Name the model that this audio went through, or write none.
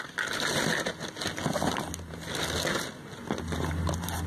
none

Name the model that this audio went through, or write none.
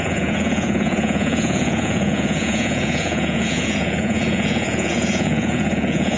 vocoder, Vocos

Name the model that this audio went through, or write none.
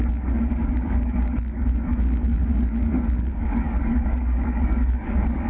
codec, DAC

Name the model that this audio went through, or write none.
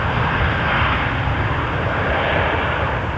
none